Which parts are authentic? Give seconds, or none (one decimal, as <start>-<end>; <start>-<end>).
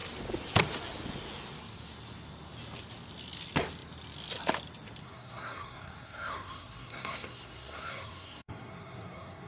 0.0-5.0